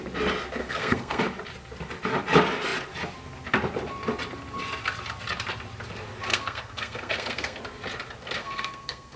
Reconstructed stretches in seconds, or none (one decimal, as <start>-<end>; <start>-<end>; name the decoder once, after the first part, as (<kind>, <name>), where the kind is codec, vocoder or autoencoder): 0.6-1.2 (codec, SNAC); 6.3-7.6; 8.4-9.2